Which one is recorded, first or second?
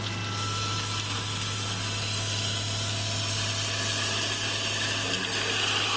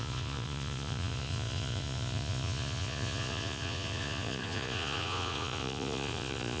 first